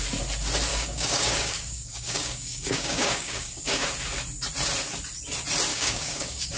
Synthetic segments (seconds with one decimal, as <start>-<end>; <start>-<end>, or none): 0.7-3.9; 5.7-6.6